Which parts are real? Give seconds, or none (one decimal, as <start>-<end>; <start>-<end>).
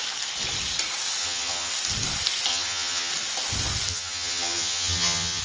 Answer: 0.0-1.2; 1.7-2.5; 3.1-3.9